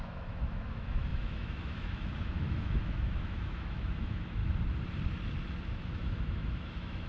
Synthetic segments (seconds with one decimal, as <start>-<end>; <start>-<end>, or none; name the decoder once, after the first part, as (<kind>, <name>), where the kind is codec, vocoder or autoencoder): 0.0-4.4 (autoencoder, DAC-VAE); 5.7-7.1